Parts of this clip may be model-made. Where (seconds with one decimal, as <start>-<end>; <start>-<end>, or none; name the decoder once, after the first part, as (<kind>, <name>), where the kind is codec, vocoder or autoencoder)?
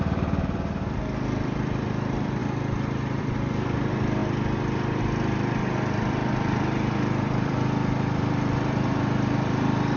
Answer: 0.0-2.4 (vocoder, BigVGAN v2); 3.2-4.2; 5.0-6.2; 6.9-10.0